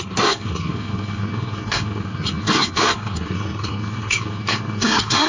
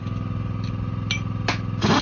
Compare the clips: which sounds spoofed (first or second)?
first